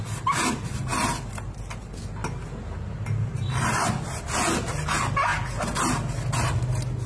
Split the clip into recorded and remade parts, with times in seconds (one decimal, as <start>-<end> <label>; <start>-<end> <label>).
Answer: 0.0-7.1 recorded